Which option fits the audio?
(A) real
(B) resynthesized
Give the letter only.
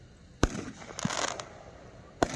A